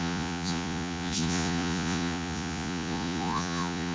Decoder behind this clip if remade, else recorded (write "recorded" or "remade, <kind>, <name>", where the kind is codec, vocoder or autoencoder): remade, vocoder, Vocos